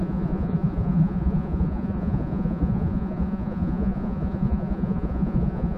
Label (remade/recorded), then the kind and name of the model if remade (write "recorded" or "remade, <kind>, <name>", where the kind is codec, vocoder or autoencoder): remade, vocoder, Vocos